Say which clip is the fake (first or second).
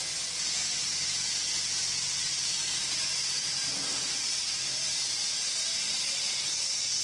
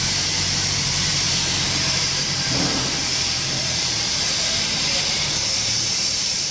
second